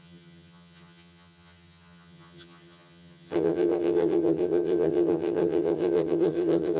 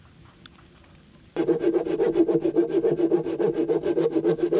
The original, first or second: second